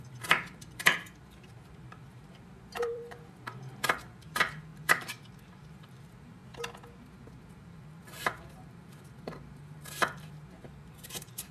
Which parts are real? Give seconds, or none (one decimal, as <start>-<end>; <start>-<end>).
6.4-7.5